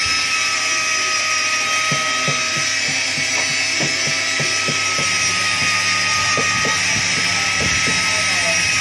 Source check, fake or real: real